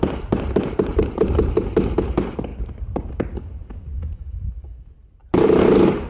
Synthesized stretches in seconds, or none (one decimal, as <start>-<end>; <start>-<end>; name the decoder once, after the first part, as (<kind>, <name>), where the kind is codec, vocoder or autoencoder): 0.9-1.7 (vocoder, BigVGAN v2); 5.2-6.1